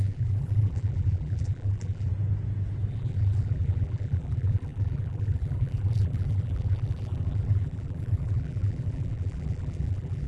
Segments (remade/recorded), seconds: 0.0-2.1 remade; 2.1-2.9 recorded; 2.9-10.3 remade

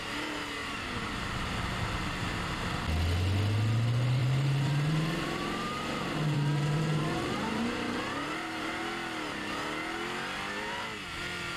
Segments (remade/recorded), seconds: 0.0-0.6 recorded; 0.6-2.8 remade; 2.8-4.2 recorded; 4.2-8.8 remade; 8.8-11.6 recorded